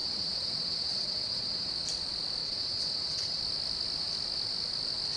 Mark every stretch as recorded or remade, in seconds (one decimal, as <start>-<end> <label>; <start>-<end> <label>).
0.0-1.7 remade; 1.7-2.4 recorded; 2.4-3.4 remade; 3.4-5.2 recorded